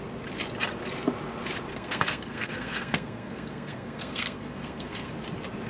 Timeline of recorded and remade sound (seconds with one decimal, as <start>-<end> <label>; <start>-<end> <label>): 0.0-1.7 recorded; 1.7-5.1 remade; 5.1-5.7 recorded